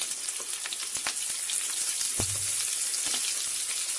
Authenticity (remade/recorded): recorded